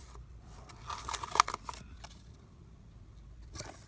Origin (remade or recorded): recorded